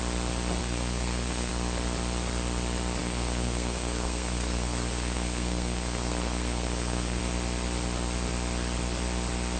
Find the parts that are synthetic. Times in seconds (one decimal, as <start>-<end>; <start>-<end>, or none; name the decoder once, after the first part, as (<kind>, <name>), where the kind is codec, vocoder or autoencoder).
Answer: 0.6-1.5 (codec, SNAC); 3.0-7.2